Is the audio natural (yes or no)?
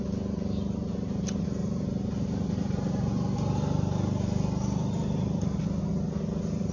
yes